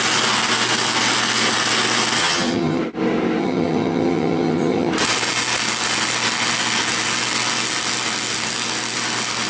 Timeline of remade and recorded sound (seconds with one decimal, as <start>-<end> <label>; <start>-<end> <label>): 0.0-2.2 recorded; 2.2-2.8 remade; 2.8-3.4 recorded; 3.4-4.9 remade; 4.9-9.5 recorded